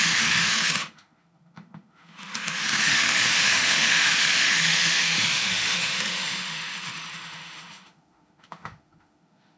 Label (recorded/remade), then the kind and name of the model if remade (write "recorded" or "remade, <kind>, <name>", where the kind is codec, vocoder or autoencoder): remade, autoencoder, DAC-VAE